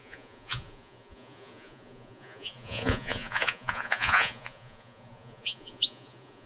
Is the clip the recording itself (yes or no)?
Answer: no